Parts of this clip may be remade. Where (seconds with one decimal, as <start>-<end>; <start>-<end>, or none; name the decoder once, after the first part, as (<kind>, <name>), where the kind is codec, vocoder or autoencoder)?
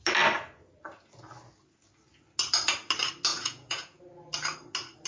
3.3-4.0 (vocoder, Vocos)